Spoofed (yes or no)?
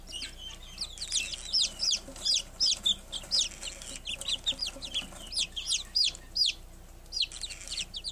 no